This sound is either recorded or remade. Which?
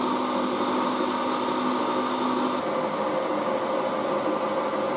recorded